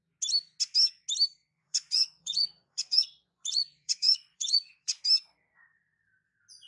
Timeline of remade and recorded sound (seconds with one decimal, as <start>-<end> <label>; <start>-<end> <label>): 0.0-1.4 recorded; 1.4-5.0 remade; 5.0-6.7 recorded